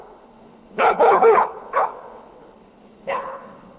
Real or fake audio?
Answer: fake